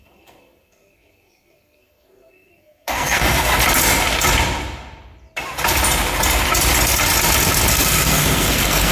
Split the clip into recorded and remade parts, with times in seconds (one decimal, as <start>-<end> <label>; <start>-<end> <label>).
0.0-3.5 remade; 3.5-7.7 recorded; 7.7-8.9 remade